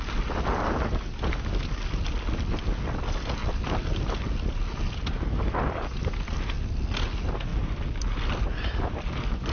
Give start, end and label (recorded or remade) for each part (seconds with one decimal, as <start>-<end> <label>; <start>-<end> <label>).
0.0-9.5 recorded